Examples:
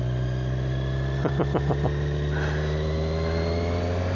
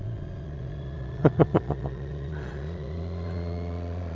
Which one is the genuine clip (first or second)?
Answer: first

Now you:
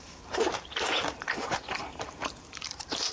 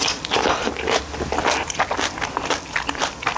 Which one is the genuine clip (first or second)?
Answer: second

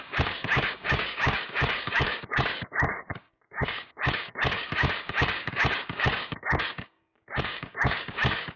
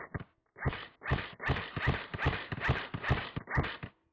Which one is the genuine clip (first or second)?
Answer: second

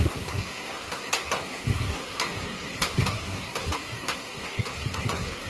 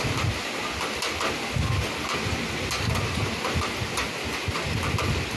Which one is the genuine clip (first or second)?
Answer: second